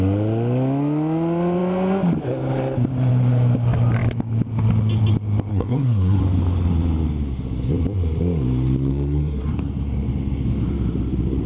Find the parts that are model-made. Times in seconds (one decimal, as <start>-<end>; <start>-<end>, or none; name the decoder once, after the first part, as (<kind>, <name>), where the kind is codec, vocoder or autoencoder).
5.5-6.2 (codec, SNAC); 8.9-9.5